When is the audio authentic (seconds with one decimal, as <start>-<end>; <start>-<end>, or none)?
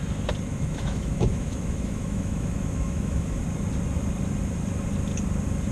0.0-0.5; 3.4-5.7